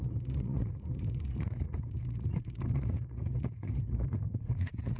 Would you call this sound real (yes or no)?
no